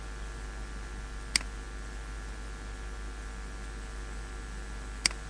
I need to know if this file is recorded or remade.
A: recorded